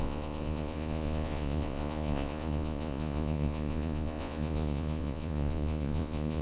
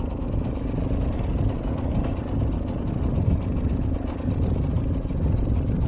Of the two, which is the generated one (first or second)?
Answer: first